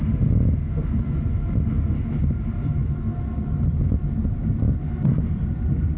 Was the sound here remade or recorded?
recorded